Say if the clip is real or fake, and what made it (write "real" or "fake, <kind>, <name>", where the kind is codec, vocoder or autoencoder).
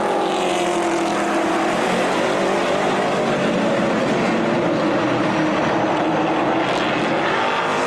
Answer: real